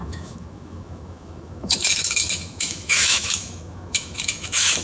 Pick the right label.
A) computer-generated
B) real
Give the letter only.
A